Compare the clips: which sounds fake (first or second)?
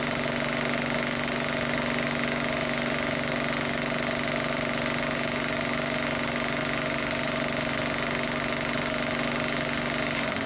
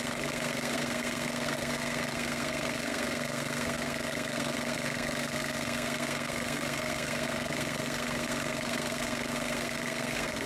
second